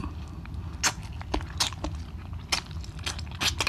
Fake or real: real